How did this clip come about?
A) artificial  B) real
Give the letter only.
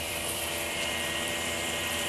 A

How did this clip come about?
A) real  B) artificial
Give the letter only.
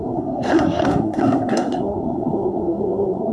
B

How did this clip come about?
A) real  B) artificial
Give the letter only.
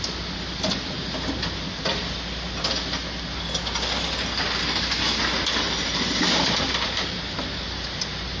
A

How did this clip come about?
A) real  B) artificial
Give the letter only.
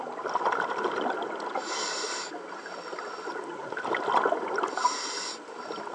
A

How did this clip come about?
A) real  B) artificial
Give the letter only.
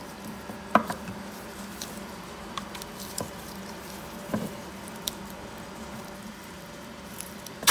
B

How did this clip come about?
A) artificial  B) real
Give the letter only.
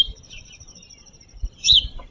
A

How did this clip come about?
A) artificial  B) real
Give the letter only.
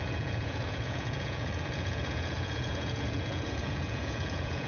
A